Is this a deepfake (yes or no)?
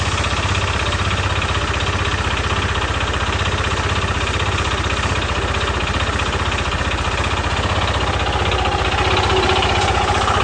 no